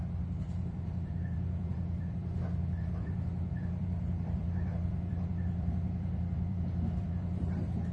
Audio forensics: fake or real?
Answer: fake